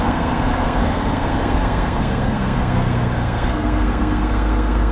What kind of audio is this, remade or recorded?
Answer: remade